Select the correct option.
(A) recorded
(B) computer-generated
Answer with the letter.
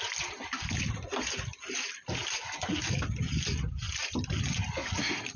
A